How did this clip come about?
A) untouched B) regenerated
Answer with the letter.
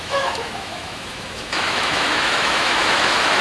B